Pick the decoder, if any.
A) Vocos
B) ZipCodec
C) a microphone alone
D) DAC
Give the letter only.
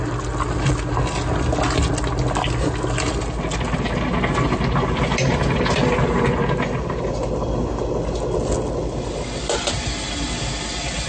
C